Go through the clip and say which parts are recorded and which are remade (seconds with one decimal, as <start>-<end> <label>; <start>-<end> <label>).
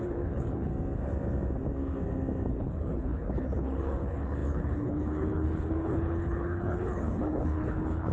0.0-0.7 remade; 0.7-2.5 recorded; 2.5-8.1 remade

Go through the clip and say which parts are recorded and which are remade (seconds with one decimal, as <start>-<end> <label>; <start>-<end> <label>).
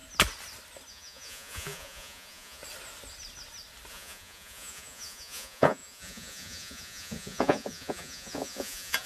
0.0-0.9 recorded; 0.9-2.6 remade; 2.6-3.9 recorded; 3.9-9.1 remade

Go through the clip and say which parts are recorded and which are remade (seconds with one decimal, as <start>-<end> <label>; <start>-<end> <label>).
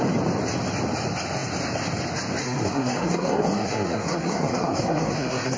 0.0-2.4 recorded; 2.4-5.6 remade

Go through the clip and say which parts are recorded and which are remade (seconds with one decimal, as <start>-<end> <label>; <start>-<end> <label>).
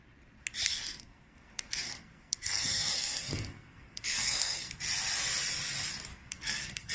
0.0-0.7 recorded; 0.7-4.7 remade; 4.7-6.1 recorded; 6.1-6.9 remade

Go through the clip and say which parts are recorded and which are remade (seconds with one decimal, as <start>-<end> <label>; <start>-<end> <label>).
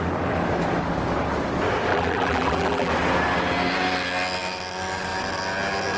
0.0-1.9 recorded; 1.9-2.9 remade; 2.9-6.0 recorded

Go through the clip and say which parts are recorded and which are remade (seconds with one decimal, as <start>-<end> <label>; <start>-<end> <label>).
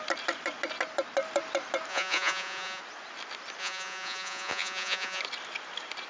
0.0-1.9 recorded; 1.9-2.8 remade; 2.8-3.6 recorded; 3.6-5.2 remade; 5.2-6.1 recorded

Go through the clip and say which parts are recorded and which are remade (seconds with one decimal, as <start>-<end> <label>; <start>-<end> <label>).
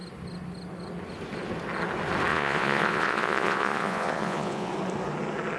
0.0-2.3 recorded; 2.3-4.7 remade; 4.7-5.6 recorded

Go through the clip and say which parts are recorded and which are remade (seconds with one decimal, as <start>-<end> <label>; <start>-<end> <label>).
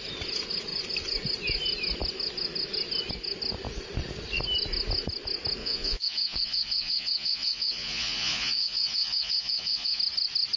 0.0-5.6 recorded; 5.6-10.0 remade; 10.0-10.6 recorded